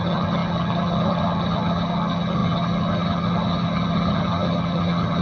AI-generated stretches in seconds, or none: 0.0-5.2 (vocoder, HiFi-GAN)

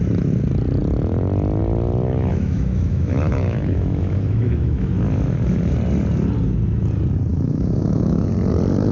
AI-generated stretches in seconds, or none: 2.3-4.9 (autoencoder, DAC-VAE); 7.3-8.3